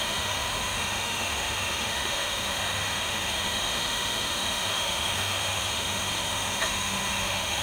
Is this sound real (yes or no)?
no